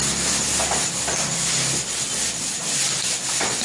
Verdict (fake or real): real